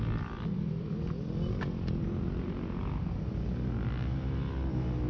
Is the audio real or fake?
real